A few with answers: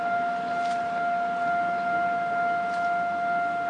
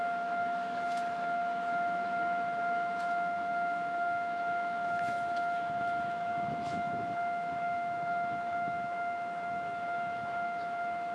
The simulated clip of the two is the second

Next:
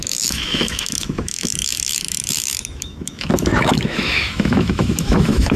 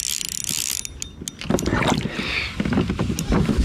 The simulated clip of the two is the first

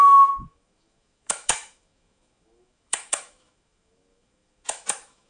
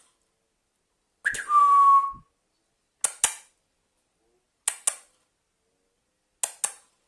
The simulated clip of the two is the first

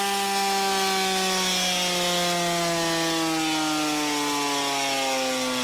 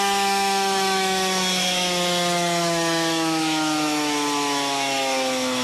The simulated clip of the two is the second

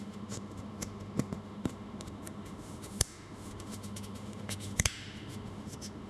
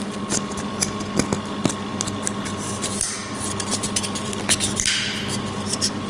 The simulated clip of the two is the first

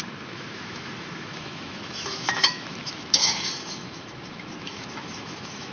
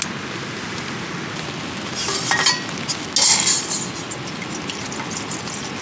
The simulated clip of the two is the first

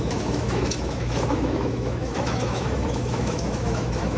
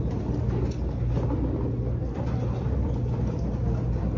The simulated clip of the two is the first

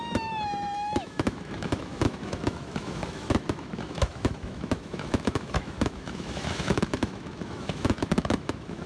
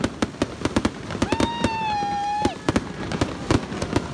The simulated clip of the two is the first